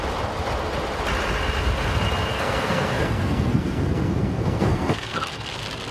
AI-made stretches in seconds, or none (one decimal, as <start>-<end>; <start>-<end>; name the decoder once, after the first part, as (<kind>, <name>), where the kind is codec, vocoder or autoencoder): 2.3-5.5 (codec, SNAC)